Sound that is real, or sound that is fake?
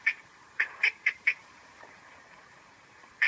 fake